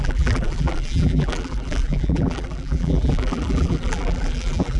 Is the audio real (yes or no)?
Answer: no